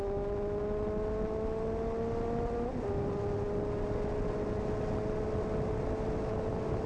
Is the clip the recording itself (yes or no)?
yes